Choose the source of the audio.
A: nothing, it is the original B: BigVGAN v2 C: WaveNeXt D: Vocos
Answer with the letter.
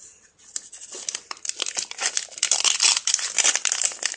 B